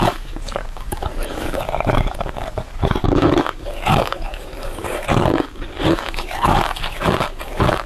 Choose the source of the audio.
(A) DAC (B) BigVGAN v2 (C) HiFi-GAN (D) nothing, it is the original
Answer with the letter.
A